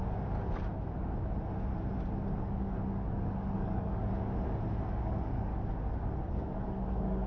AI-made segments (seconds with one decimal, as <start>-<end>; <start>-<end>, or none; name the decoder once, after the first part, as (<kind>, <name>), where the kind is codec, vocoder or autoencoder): 3.1-4.0 (codec, DAC); 4.9-5.5; 6.3-7.3